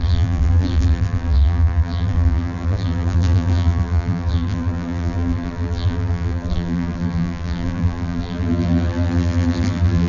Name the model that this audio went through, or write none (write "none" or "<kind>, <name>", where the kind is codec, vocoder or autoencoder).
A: vocoder, BigVGAN v2